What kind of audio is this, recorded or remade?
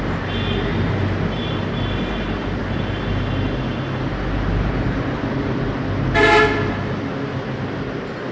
recorded